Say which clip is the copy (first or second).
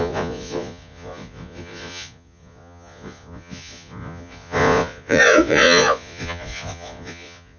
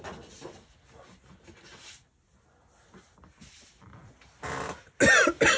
first